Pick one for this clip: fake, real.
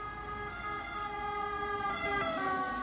real